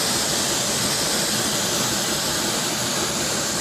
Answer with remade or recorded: recorded